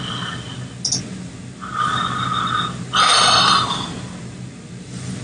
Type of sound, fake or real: real